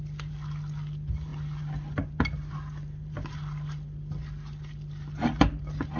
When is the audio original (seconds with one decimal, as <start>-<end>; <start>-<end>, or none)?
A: 0.0-6.0